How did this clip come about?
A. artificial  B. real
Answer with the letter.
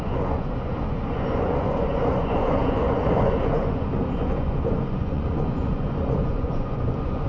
A